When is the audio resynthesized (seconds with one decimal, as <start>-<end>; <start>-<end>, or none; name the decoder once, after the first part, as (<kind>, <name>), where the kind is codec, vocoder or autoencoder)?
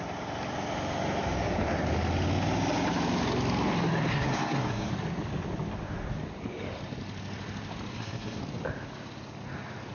4.1-4.9 (codec, SNAC); 7.9-8.4